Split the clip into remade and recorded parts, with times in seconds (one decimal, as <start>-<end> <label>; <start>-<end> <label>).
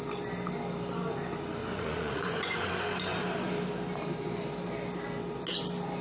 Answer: 0.0-1.6 recorded; 1.6-2.7 remade; 2.7-6.0 recorded